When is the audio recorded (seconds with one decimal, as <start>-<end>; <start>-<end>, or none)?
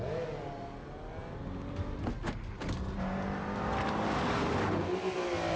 0.0-5.6